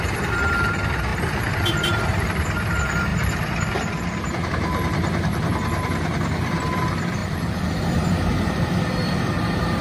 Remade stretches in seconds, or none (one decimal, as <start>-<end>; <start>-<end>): 0.0-9.8